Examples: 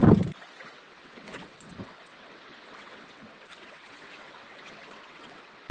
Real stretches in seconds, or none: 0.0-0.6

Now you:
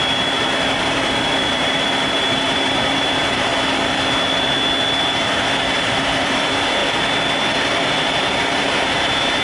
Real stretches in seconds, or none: 3.5-5.8; 6.8-7.9

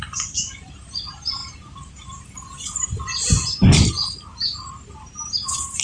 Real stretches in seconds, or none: none